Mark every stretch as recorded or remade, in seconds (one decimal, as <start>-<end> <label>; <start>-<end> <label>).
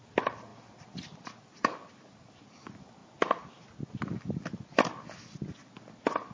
0.0-6.3 recorded